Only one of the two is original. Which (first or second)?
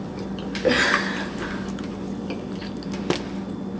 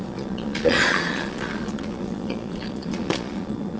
first